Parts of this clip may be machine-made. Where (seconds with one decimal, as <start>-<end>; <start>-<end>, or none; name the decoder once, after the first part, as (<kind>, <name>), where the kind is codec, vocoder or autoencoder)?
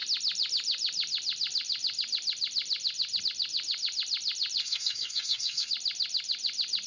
4.6-5.7 (codec, SNAC)